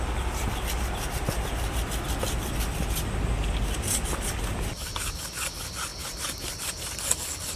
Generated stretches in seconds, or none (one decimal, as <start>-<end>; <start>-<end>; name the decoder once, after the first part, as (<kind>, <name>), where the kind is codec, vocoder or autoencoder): none